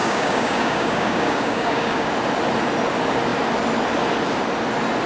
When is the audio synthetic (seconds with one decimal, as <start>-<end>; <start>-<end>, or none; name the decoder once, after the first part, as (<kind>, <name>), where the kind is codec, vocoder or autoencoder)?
0.0-2.1 (codec, DAC)